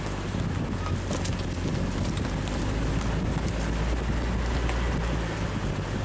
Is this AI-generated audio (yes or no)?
no